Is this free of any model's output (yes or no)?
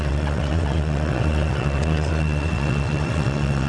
no